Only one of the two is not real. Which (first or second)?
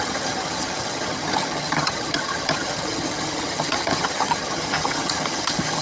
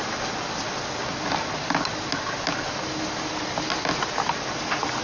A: first